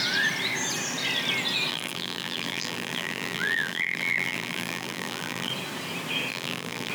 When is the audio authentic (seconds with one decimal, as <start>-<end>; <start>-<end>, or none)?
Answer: 0.0-1.7; 5.5-6.3